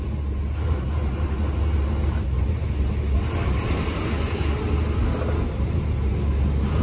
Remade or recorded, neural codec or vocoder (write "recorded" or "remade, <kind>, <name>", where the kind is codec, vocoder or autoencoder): recorded